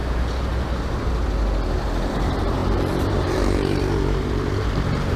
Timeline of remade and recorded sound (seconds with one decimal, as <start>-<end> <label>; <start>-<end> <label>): 0.0-2.1 recorded; 2.1-5.2 remade